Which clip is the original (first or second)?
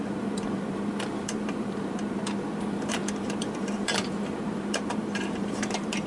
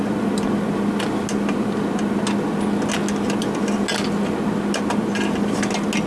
second